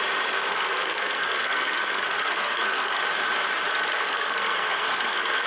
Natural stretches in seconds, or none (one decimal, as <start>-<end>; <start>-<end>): 0.0-0.5; 3.0-3.7